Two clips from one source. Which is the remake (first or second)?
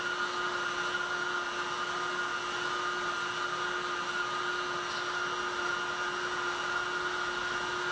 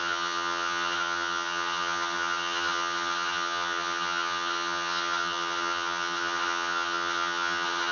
second